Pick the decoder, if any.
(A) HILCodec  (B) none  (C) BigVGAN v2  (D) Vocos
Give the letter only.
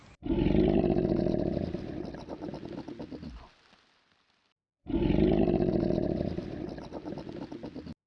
B